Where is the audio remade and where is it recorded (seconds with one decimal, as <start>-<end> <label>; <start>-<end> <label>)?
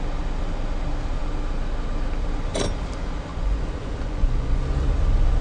0.0-3.3 recorded; 3.3-4.6 remade; 4.6-5.4 recorded